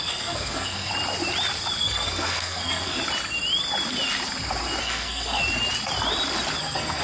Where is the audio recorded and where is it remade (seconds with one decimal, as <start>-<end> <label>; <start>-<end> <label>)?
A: 0.0-0.9 remade; 0.9-1.8 recorded; 1.8-3.0 remade; 3.0-4.8 recorded; 4.8-5.4 remade; 5.4-6.6 recorded; 6.6-7.0 remade